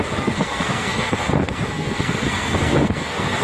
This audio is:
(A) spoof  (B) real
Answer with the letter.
A